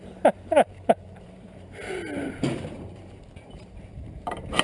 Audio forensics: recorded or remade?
remade